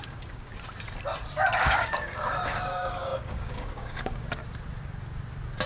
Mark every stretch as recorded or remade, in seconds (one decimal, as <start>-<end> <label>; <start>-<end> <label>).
0.0-0.5 remade; 0.5-1.6 recorded; 1.6-4.4 remade; 4.4-5.7 recorded